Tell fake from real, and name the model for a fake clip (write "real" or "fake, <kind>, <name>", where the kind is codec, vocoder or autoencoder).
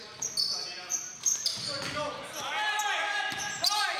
real